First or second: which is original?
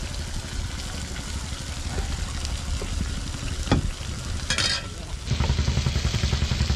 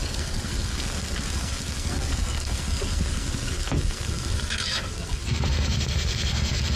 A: first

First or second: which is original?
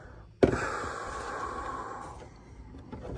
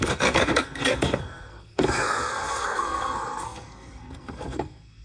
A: first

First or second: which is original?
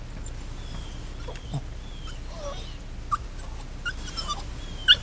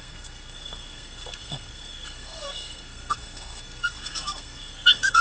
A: first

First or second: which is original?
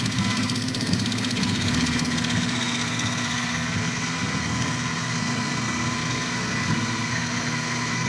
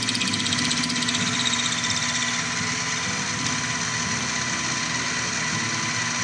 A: second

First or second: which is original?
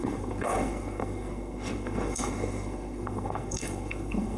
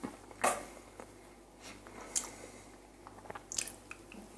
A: second